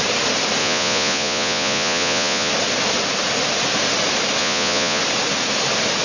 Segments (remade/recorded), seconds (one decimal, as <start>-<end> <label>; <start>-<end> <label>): 0.0-0.6 recorded; 0.6-2.5 remade; 2.5-4.4 recorded; 4.4-5.0 remade; 5.0-6.0 recorded